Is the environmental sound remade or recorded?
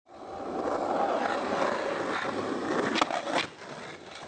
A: recorded